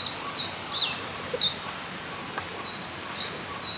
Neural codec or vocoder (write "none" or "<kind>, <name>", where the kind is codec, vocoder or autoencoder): none